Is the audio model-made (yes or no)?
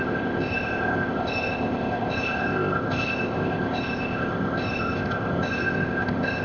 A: yes